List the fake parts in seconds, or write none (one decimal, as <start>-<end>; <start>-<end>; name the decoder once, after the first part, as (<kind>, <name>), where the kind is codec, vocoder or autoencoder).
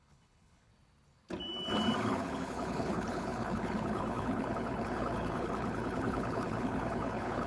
0.0-0.7 (codec, HILCodec); 2.0-7.5